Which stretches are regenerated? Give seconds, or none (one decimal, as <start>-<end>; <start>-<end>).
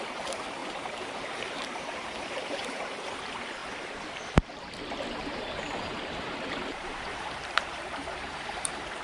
0.0-3.6; 5.1-9.0